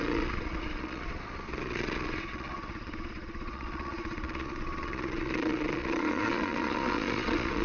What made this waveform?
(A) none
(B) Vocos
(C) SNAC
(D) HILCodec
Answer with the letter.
B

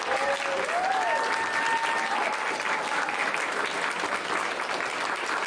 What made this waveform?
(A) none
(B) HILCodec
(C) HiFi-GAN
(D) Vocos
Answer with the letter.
A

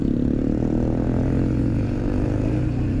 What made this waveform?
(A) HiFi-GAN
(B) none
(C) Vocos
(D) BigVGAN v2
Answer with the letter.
B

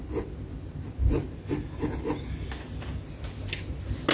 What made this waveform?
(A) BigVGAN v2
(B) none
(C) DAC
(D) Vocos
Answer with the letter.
B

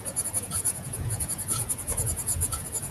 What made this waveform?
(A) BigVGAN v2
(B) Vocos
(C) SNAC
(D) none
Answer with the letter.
B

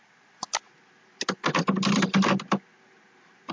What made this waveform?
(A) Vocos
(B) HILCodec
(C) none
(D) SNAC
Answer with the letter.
C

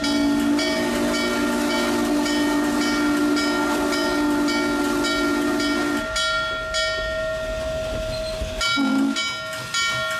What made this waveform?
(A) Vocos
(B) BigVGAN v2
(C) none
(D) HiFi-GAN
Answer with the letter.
C